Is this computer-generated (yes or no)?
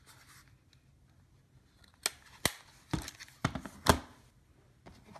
no